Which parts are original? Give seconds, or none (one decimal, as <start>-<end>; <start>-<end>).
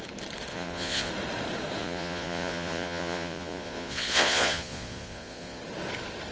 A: 0.0-0.5; 1.1-1.8; 5.6-6.3